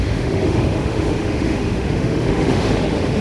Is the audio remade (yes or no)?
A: yes